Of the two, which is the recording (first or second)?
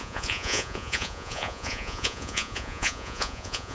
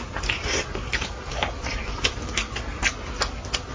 second